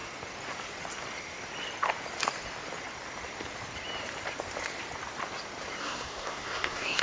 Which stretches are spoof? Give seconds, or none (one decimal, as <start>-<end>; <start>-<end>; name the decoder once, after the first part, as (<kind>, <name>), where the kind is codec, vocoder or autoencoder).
5.8-7.0 (codec, SNAC)

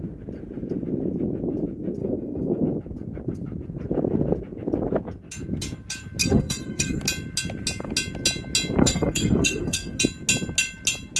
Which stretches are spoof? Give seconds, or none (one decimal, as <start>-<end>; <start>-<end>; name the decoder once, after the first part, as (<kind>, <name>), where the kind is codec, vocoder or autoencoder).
2.0-2.6 (codec, SNAC); 6.2-7.0; 8.8-10.0

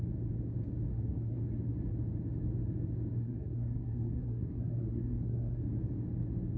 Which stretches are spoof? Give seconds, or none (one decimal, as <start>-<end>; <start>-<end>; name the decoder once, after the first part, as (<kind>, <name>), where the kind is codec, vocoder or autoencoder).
0.9-1.4 (codec, SNAC); 3.2-5.6

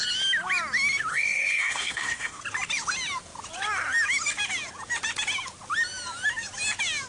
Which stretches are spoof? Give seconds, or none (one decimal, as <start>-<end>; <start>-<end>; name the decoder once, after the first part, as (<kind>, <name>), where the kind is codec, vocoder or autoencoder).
1.1-2.4 (codec, SNAC)

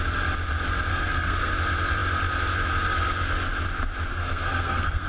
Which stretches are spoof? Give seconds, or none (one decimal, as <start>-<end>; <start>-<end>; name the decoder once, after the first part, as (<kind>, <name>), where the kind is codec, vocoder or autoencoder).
0.9-1.5 (codec, SNAC); 4.1-5.1